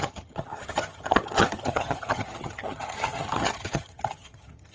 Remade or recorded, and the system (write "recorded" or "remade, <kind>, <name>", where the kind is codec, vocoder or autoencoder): remade, vocoder, HiFi-GAN